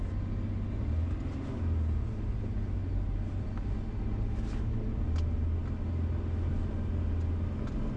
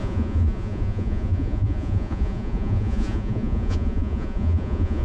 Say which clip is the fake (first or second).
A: second